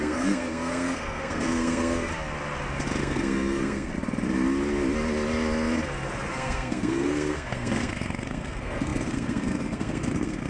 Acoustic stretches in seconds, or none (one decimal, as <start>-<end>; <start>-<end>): 2.1-3.0; 3.9-6.3